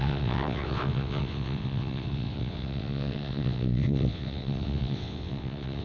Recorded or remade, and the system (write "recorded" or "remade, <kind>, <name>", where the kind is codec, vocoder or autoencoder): remade, vocoder, WaveNeXt